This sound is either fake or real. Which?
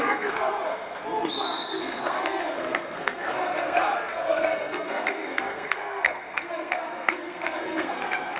fake